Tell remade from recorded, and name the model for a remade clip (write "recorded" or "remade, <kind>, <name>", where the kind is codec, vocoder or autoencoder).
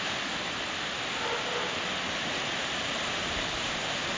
recorded